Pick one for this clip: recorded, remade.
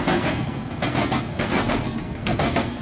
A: remade